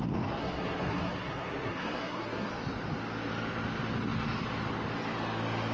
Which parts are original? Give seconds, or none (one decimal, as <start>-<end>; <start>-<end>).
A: 0.0-0.4; 2.5-5.7